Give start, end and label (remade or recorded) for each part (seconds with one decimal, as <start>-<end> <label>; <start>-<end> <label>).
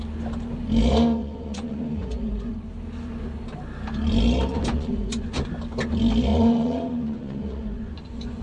0.0-1.2 recorded; 1.2-2.5 remade; 2.5-4.5 recorded; 4.5-5.5 remade; 5.5-6.3 recorded; 6.3-8.4 remade